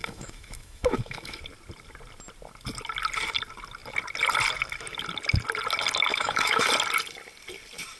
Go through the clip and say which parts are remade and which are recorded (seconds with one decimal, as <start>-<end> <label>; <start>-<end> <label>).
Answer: 0.0-1.4 remade; 1.4-6.1 recorded; 6.1-6.7 remade; 6.7-8.0 recorded